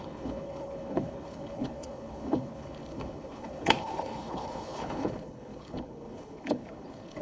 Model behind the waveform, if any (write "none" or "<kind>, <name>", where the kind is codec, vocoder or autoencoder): codec, HILCodec